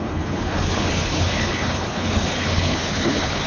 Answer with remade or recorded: remade